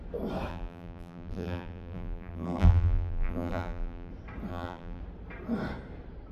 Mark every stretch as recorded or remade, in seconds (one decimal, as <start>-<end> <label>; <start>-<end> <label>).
0.0-0.5 recorded; 0.5-4.1 remade; 4.1-4.5 recorded; 4.5-5.0 remade; 5.0-6.3 recorded